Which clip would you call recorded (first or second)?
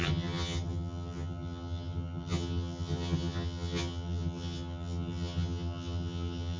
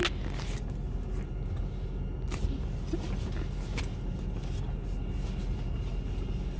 second